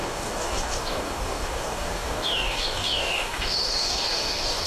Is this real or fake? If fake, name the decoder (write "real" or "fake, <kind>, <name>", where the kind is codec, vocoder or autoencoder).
fake, codec, DAC